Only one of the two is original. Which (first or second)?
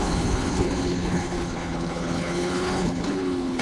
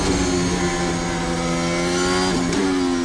second